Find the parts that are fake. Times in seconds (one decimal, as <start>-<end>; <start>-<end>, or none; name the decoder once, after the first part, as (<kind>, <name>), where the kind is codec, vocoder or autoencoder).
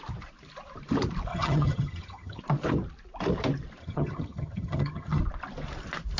1.3-2.4 (vocoder, HiFi-GAN); 3.8-5.2